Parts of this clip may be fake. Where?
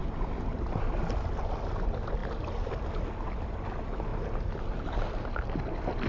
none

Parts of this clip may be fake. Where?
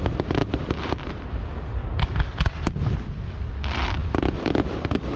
0.0-1.8 (vocoder, BigVGAN v2); 3.5-5.2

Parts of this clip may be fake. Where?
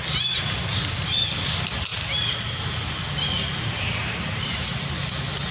0.0-5.5 (vocoder, BigVGAN v2)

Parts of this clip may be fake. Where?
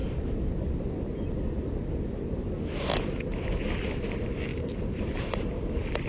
4.5-5.2 (vocoder, BigVGAN v2)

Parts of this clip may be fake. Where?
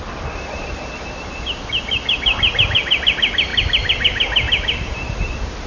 none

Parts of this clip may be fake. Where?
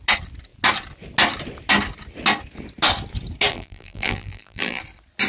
3.5-4.8 (vocoder, BigVGAN v2)